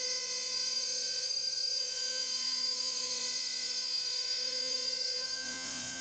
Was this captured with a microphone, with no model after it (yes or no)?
no